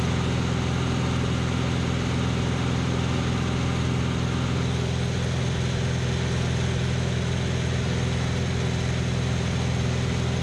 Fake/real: real